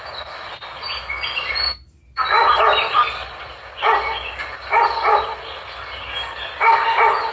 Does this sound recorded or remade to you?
recorded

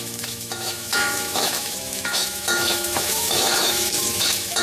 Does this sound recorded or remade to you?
remade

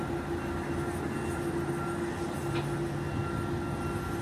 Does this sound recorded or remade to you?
recorded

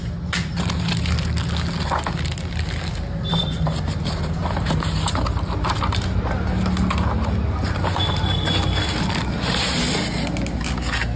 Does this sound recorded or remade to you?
recorded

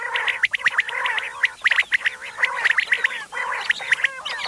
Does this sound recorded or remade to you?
recorded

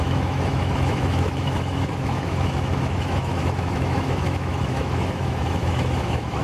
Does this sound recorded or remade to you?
remade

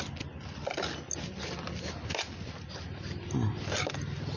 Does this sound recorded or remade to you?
recorded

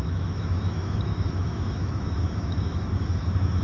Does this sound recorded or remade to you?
remade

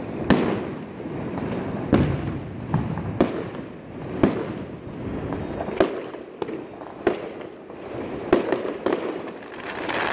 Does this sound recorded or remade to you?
recorded